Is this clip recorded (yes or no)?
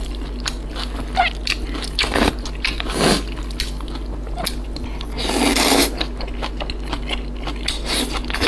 yes